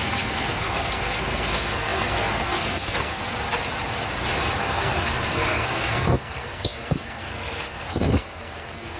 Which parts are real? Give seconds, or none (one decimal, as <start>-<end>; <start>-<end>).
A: 3.2-4.6